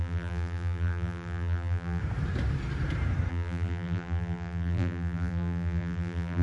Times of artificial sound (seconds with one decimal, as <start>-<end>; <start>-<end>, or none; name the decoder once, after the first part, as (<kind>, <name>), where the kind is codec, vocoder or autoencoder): 0.0-2.0 (vocoder, BigVGAN v2); 3.3-6.4